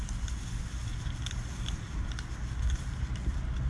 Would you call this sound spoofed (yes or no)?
no